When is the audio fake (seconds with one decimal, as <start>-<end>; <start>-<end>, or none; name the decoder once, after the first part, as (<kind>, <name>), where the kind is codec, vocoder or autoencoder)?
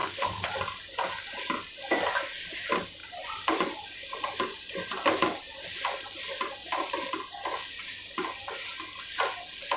0.0-0.5 (codec, HILCodec)